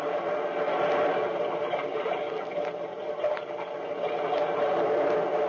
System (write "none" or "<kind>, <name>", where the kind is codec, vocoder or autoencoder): none